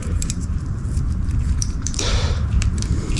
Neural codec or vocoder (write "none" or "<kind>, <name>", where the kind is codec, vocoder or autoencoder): vocoder, BigVGAN v2